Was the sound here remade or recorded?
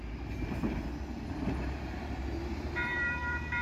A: remade